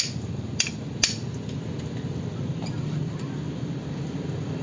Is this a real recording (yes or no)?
yes